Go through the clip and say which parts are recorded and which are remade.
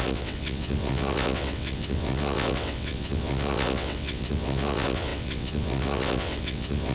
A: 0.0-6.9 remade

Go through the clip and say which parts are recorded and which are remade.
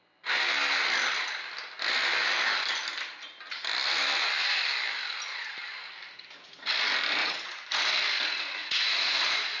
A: 0.0-7.2 recorded; 7.2-7.8 remade; 7.8-8.6 recorded; 8.6-9.6 remade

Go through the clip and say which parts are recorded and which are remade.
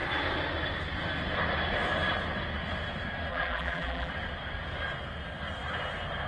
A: 0.0-3.3 recorded; 3.3-4.1 remade; 4.1-6.3 recorded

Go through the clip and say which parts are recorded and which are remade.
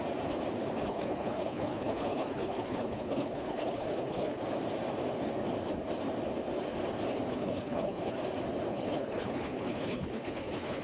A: 0.0-0.9 recorded; 0.9-4.4 remade; 4.4-7.3 recorded; 7.3-8.2 remade; 8.2-8.7 recorded; 8.7-10.8 remade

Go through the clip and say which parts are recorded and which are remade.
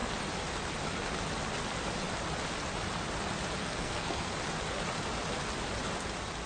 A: 0.0-3.6 recorded; 3.6-4.3 remade; 4.3-6.5 recorded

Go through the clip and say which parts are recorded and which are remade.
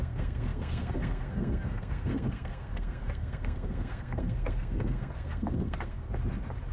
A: 0.0-6.1 remade; 6.1-6.7 recorded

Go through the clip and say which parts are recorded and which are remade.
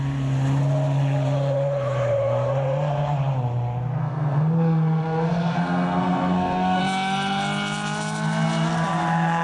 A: 0.0-4.0 recorded; 4.0-6.8 remade; 6.8-9.4 recorded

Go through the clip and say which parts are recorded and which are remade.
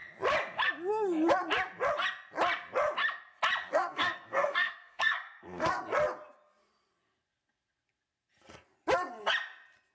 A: 0.0-3.6 recorded; 3.6-5.8 remade; 5.8-9.9 recorded